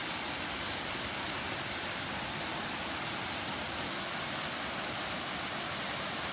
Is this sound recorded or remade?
recorded